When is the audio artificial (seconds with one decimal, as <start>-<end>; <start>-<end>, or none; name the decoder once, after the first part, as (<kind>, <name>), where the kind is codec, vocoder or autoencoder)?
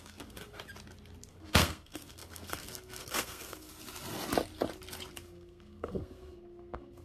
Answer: 0.0-0.4 (codec, SNAC); 1.3-3.7; 5.1-7.0